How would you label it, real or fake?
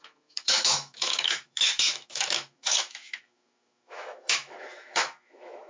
fake